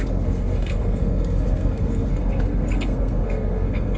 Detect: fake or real fake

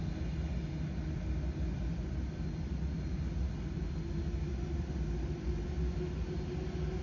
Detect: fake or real real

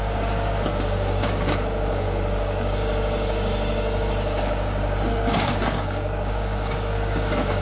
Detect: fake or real fake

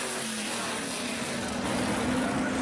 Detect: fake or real real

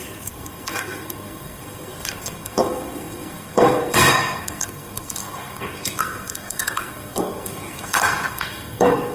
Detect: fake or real fake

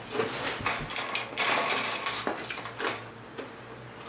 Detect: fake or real real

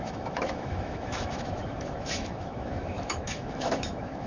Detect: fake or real fake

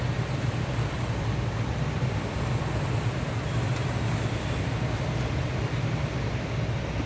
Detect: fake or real fake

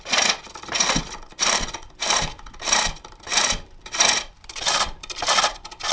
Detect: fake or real fake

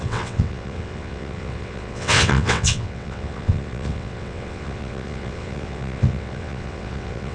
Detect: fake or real fake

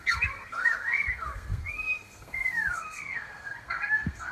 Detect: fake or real fake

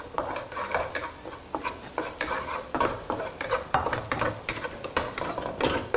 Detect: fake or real real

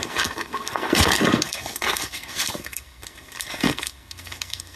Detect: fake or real fake